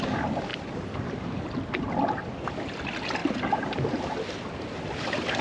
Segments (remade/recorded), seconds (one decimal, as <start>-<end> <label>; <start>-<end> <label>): 0.0-0.5 recorded; 0.5-1.4 remade; 1.4-3.2 recorded; 3.2-3.8 remade; 3.8-5.4 recorded